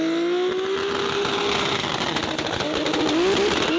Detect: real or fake real